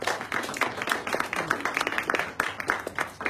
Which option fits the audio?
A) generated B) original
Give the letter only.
B